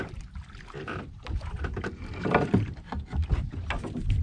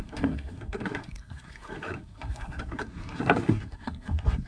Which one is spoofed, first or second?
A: second